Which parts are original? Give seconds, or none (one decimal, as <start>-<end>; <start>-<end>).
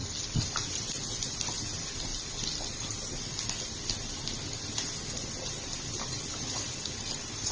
0.0-7.5